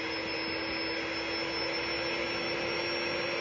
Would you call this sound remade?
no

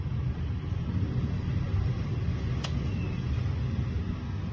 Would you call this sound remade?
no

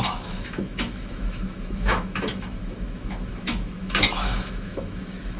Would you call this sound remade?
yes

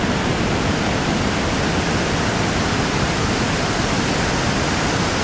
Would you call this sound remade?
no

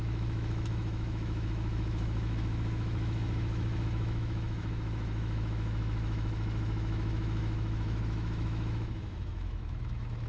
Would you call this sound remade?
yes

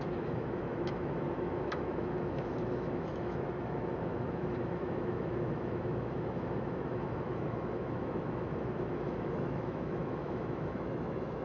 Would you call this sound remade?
yes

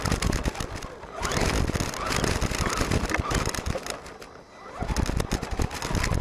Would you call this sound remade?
no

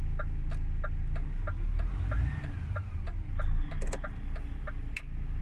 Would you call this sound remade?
no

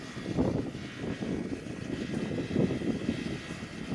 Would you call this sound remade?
no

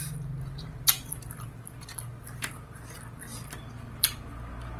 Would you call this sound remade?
no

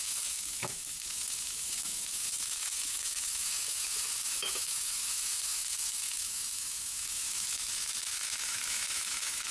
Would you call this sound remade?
yes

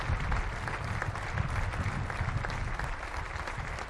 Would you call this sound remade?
no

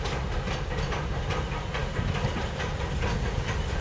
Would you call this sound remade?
no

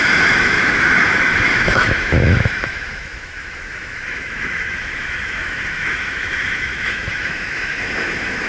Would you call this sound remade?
yes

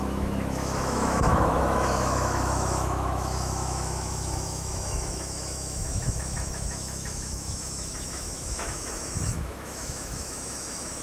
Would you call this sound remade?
yes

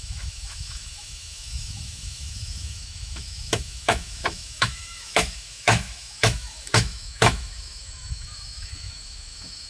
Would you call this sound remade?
yes